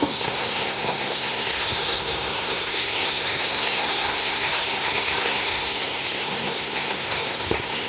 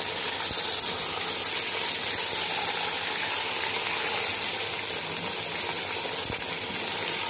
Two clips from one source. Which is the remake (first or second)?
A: first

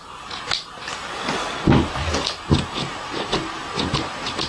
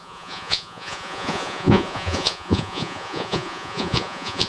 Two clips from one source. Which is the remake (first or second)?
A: second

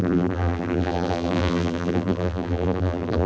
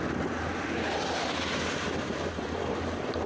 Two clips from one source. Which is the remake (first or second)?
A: first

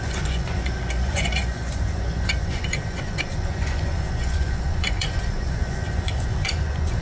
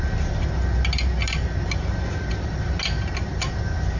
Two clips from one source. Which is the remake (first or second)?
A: first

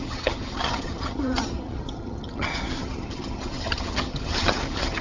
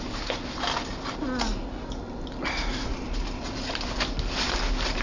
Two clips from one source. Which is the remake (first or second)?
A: first